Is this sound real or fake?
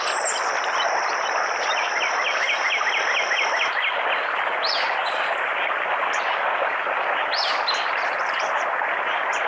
real